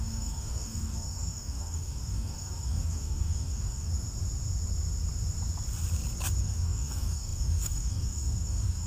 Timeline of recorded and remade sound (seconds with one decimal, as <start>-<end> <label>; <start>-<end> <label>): 0.0-3.9 remade; 3.9-6.4 recorded; 6.4-8.9 remade